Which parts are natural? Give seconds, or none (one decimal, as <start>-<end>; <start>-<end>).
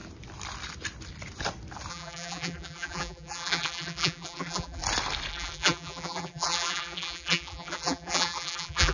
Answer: 0.0-1.9; 4.8-5.3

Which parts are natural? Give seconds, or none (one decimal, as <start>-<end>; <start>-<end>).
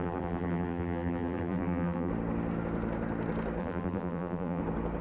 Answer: 2.1-3.6; 4.6-5.0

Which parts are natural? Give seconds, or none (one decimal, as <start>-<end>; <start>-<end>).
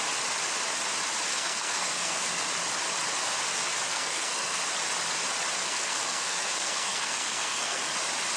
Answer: 0.0-1.3; 2.4-3.9; 4.6-5.6; 7.8-8.4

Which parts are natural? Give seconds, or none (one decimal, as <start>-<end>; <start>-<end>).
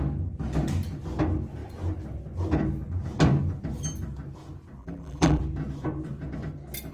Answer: 0.0-4.8; 5.4-6.9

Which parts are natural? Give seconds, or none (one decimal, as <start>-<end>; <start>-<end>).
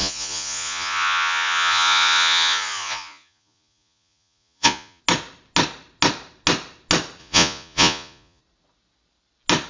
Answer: 5.0-7.2; 8.4-9.7